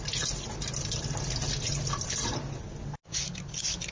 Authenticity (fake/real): real